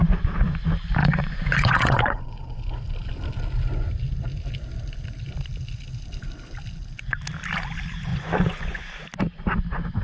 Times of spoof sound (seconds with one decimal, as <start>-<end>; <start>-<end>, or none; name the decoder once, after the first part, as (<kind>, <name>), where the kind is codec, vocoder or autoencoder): 1.0-2.6 (vocoder, Vocos); 8.1-8.8